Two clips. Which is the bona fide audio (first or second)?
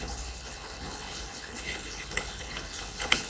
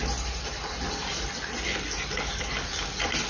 second